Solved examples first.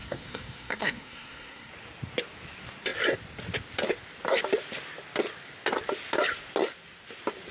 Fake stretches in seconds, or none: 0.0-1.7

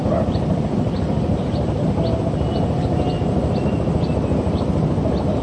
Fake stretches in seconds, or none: none

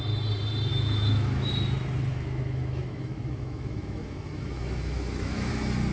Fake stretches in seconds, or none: 0.7-1.5; 2.1-5.5

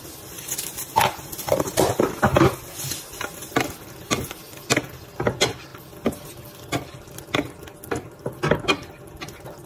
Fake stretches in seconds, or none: none

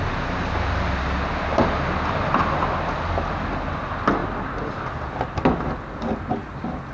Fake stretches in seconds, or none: none

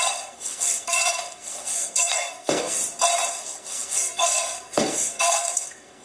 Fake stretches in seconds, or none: 0.0-2.8; 3.3-6.0

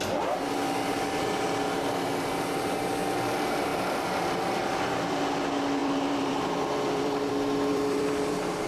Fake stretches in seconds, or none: 3.7-5.1; 5.8-7.3; 7.7-8.7

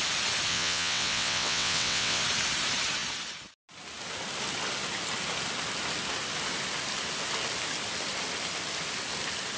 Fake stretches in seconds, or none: 0.5-2.2